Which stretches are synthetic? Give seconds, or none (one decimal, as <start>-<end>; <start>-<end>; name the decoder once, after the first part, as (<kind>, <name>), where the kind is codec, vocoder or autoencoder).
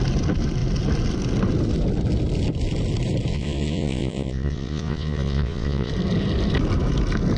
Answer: 3.3-5.9 (vocoder, Vocos)